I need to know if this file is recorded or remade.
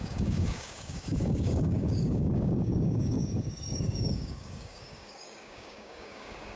remade